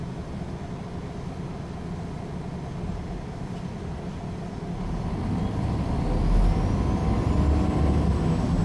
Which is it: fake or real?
real